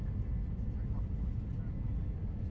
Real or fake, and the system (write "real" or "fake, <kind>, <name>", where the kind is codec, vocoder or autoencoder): real